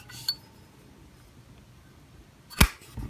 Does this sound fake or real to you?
real